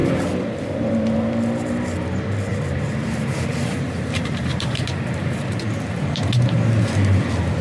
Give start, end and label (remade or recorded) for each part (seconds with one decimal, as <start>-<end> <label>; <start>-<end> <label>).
0.0-2.5 recorded; 2.5-6.3 remade; 6.3-7.6 recorded